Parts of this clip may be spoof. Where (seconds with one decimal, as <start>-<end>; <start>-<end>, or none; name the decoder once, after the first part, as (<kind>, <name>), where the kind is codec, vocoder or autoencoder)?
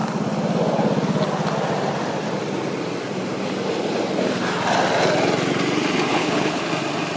6.1-6.7 (codec, HILCodec)